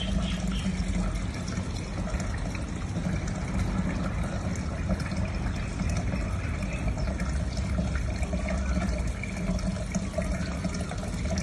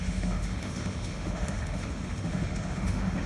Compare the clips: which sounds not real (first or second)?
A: second